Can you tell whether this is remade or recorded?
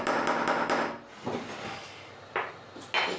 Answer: recorded